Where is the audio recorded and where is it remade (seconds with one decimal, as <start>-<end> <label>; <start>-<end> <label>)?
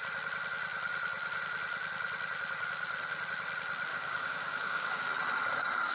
0.0-3.9 recorded; 3.9-5.1 remade; 5.1-5.9 recorded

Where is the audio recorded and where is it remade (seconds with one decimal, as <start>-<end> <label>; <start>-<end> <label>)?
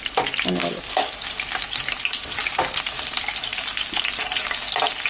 0.0-0.6 recorded; 0.6-1.1 remade; 1.1-5.1 recorded